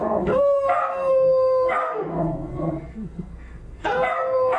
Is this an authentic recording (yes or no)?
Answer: no